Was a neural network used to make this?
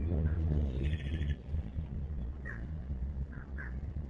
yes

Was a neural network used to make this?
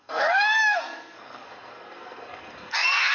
yes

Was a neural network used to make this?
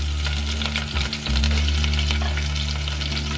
no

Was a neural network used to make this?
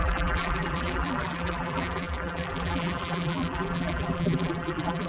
yes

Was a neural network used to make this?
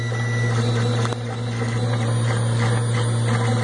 no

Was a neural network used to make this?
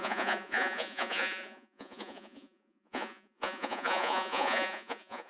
yes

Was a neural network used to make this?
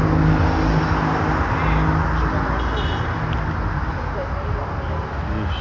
no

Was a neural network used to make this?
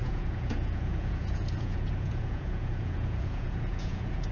yes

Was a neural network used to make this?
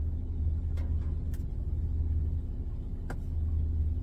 no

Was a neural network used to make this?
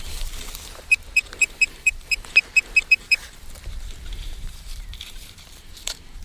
yes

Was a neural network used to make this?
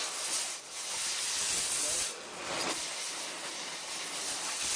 no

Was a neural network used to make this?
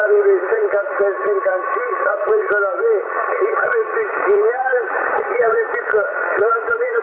yes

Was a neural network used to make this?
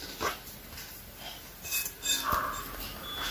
no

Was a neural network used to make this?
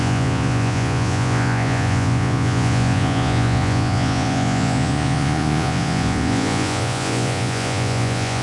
yes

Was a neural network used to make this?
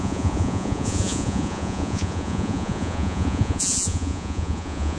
yes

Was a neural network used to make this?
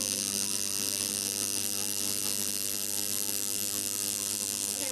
no